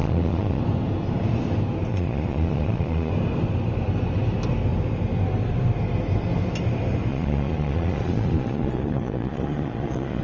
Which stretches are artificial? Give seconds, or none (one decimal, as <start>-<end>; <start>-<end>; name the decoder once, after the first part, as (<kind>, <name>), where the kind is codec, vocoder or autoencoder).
0.0-0.6 (vocoder, Vocos); 1.9-3.1; 7.1-10.2